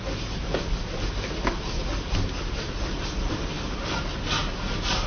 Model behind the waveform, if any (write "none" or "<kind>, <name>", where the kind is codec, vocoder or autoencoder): none